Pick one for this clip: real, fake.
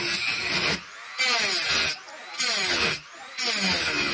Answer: real